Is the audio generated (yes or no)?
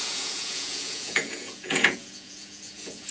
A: yes